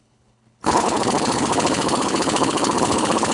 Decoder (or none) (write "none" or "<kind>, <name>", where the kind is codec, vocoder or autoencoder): codec, HILCodec